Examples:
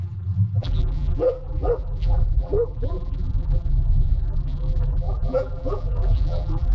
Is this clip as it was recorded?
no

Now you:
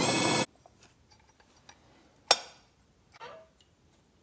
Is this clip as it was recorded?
yes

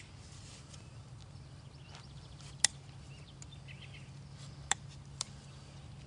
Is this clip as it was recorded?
yes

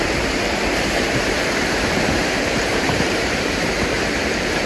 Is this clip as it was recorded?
no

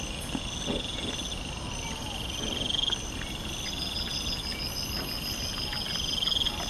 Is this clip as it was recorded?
yes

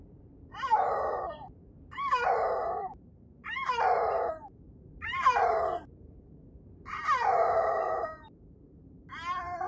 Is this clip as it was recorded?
no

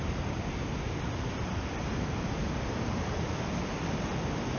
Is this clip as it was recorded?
yes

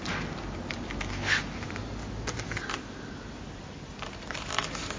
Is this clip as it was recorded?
yes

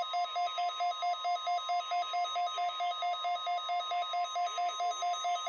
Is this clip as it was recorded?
yes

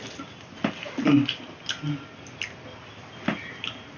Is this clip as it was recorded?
yes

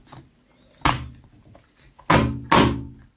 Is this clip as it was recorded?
yes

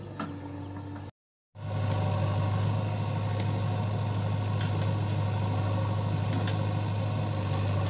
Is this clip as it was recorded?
yes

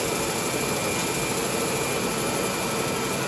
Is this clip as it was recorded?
yes